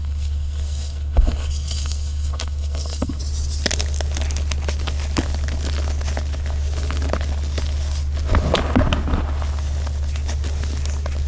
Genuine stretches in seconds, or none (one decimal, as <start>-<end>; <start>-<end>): 3.2-11.3